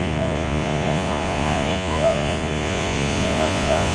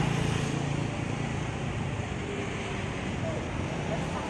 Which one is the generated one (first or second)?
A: first